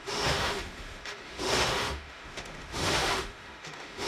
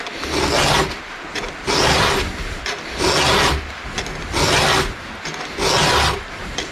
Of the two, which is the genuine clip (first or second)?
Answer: second